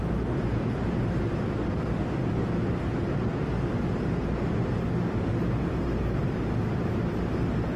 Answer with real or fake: real